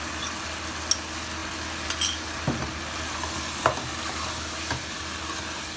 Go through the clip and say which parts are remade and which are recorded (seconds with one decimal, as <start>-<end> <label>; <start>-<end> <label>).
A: 0.0-5.8 recorded